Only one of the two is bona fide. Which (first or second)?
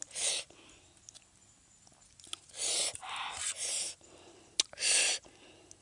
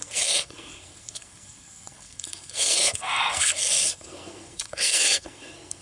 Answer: first